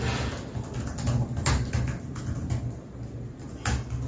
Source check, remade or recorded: recorded